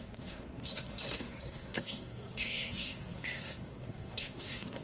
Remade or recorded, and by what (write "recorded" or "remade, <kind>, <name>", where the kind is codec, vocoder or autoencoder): remade, codec, SNAC